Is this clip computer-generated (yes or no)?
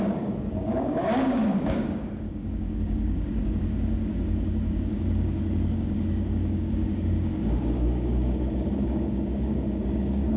yes